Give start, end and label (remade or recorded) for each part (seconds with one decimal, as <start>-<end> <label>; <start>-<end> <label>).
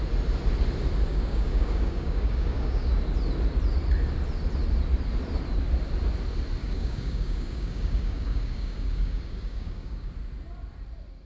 0.0-1.1 recorded; 1.1-2.9 remade; 2.9-6.6 recorded; 6.6-10.1 remade; 10.1-11.3 recorded